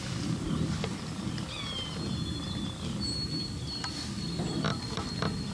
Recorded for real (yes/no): yes